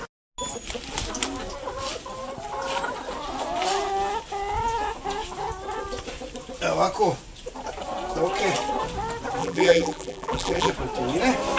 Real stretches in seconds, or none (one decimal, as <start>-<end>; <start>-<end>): 0.0-9.4; 10.7-11.6